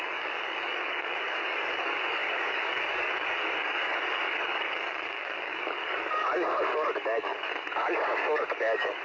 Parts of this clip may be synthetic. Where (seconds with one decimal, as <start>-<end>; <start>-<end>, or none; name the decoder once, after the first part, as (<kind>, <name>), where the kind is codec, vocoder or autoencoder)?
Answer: 0.0-9.0 (codec, DAC)

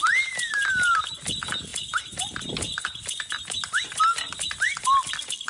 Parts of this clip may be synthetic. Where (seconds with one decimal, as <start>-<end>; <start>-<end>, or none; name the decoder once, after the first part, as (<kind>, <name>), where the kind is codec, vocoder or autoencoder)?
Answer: none

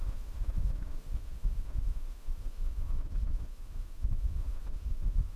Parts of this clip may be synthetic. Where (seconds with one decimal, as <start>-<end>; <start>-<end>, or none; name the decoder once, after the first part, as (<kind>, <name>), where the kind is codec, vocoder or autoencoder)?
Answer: 0.0-5.4 (autoencoder, DAC-VAE)

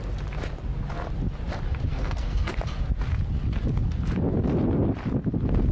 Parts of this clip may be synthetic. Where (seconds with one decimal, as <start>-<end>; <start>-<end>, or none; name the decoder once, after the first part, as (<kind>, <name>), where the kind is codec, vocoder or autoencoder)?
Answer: 1.9-2.5 (codec, SNAC)

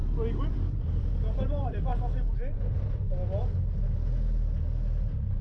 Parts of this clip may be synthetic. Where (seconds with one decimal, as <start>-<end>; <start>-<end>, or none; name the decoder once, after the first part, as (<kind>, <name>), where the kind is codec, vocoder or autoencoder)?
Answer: 0.5-1.9 (vocoder, BigVGAN v2)

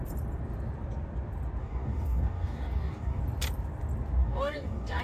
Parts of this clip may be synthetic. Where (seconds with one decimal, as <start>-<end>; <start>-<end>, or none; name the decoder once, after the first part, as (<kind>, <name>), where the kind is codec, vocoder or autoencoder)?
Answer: 1.6-3.2 (codec, DAC); 4.2-5.0